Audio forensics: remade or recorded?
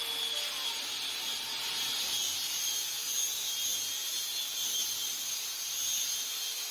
recorded